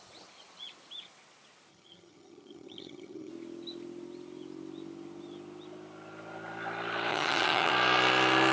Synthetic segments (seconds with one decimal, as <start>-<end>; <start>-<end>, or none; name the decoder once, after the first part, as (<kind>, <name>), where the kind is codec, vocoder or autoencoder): 1.7-3.3 (vocoder, HiFi-GAN); 7.1-7.7